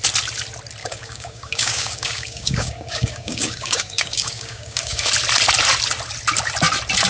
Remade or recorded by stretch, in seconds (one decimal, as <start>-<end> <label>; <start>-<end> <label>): 0.0-0.8 recorded; 0.8-5.1 remade; 5.1-7.1 recorded